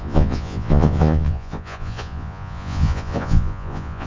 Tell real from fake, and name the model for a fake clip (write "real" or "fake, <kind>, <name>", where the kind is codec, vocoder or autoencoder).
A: fake, vocoder, Vocos